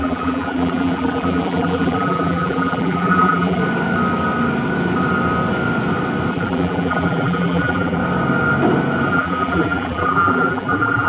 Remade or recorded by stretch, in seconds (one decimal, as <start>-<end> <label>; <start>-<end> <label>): 0.0-3.6 remade; 3.6-6.3 recorded; 6.3-8.0 remade; 8.0-9.1 recorded; 9.1-11.1 remade

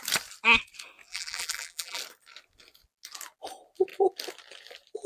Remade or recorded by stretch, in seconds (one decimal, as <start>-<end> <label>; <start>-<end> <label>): 0.0-1.1 recorded; 1.1-2.0 remade; 2.0-5.1 recorded

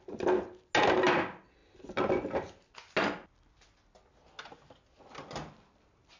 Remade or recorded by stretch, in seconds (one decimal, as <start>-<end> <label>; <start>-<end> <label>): 0.0-6.2 recorded

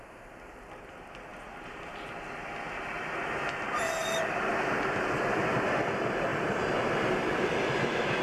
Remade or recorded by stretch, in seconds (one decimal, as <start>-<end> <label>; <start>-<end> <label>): 0.0-1.3 recorded; 1.3-2.5 remade; 2.5-4.0 recorded; 4.0-4.5 remade; 4.5-8.2 recorded